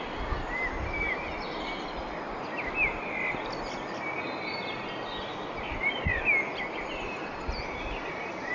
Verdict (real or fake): real